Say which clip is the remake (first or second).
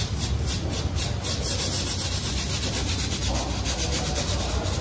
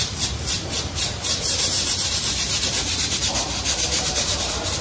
second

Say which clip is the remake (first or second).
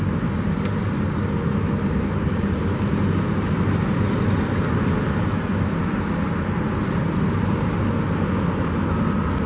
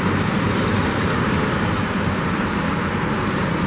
second